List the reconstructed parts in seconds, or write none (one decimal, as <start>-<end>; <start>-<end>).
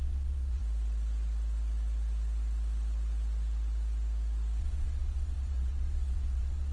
0.0-0.6; 4.6-6.7